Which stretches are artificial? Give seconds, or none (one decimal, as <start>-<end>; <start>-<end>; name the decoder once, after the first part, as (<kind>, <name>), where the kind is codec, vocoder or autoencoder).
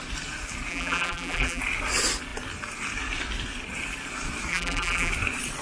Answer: 0.7-1.6 (vocoder, BigVGAN v2); 4.5-5.1